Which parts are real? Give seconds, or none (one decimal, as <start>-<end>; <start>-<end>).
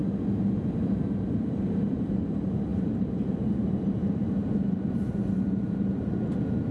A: 0.0-1.5